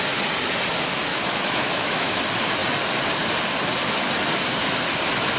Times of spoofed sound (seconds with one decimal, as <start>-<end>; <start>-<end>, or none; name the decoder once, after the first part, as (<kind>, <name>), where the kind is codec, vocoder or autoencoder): 1.1-2.2 (autoencoder, DAC-VAE)